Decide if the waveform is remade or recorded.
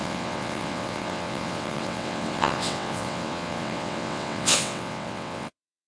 remade